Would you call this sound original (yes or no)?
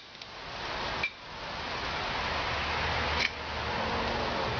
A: yes